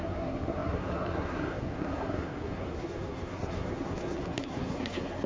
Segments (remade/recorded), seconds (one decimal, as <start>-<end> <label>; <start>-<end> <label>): 0.0-5.3 remade